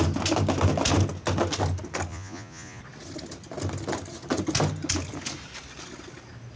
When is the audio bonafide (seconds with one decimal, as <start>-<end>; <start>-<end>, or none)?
0.0-2.1; 2.8-6.6